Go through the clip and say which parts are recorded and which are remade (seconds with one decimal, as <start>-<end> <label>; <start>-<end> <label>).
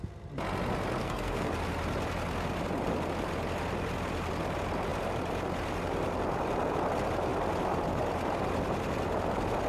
0.0-1.0 recorded; 1.0-1.5 remade; 1.5-9.7 recorded